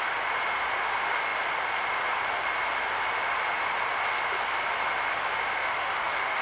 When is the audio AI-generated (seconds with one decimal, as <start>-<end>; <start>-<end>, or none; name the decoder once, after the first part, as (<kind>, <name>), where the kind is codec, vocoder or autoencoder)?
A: 5.6-6.4 (autoencoder, DAC-VAE)